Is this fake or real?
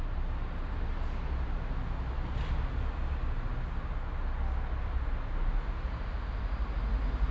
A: real